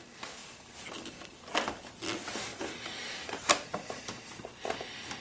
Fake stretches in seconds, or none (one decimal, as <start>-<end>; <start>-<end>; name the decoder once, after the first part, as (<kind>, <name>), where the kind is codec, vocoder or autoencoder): 2.5-4.4 (vocoder, BigVGAN v2)